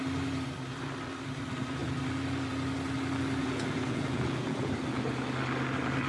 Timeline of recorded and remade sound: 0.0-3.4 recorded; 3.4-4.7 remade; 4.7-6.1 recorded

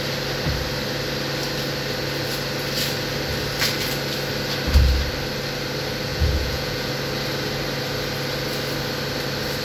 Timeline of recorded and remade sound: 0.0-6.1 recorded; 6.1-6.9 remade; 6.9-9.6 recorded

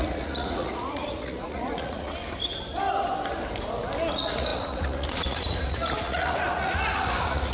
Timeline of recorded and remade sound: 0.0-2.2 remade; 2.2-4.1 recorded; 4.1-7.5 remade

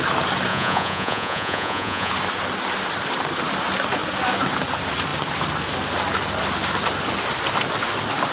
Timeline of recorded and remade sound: 0.0-0.5 recorded; 0.5-2.1 remade; 2.1-8.3 recorded

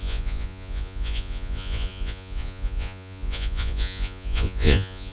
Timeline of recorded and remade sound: 0.0-5.1 remade

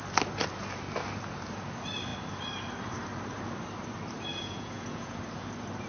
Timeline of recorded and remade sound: 0.0-4.3 recorded; 4.3-5.2 remade; 5.2-5.9 recorded